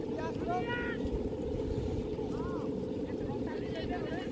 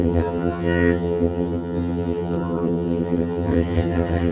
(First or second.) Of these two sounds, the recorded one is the first